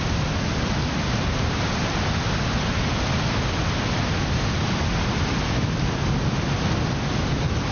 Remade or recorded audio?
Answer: recorded